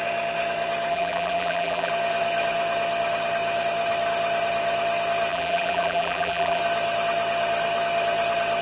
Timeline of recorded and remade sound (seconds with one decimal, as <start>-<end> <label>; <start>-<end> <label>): 0.0-0.9 recorded; 0.9-1.9 remade; 1.9-5.3 recorded; 5.3-6.6 remade; 6.6-8.6 recorded